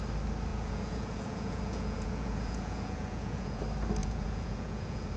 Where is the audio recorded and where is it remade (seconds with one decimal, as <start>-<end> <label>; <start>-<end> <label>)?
0.0-0.5 recorded; 0.5-3.6 remade; 3.6-4.0 recorded; 4.0-5.2 remade